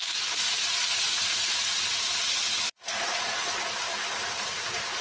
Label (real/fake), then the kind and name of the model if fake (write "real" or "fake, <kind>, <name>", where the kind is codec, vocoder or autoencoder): fake, vocoder, Vocos